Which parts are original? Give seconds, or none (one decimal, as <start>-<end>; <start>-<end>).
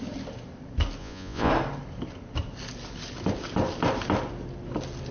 0.0-1.0; 1.5-5.1